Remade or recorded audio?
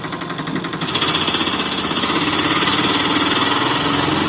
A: recorded